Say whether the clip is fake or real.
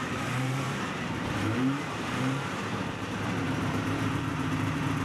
fake